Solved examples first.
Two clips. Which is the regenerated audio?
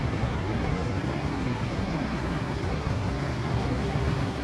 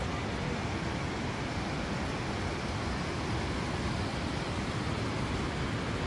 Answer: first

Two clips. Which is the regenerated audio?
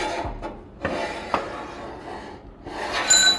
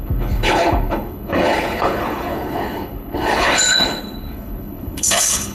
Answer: second